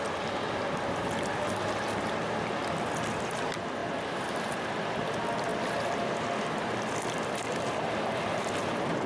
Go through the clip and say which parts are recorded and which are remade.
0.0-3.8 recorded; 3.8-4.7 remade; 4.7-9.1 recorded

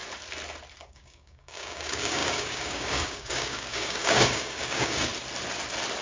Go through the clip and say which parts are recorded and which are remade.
0.0-0.8 recorded; 0.8-5.1 remade; 5.1-6.0 recorded

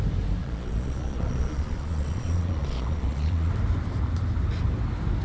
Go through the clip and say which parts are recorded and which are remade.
0.0-0.4 recorded; 0.4-3.5 remade; 3.5-5.2 recorded

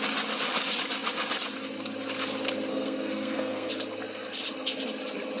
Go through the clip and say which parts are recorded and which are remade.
0.0-2.7 recorded; 2.7-3.7 remade; 3.7-5.4 recorded

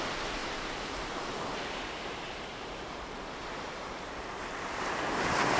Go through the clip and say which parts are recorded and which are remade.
0.0-0.4 recorded; 0.4-3.0 remade; 3.0-5.6 recorded

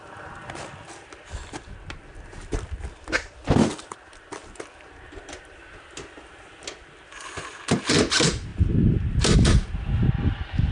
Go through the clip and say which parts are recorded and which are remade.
0.0-10.7 recorded

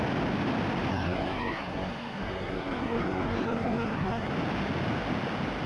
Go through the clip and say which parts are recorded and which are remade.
0.0-0.9 recorded; 0.9-4.3 remade; 4.3-5.7 recorded